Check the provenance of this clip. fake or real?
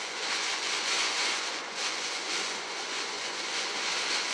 fake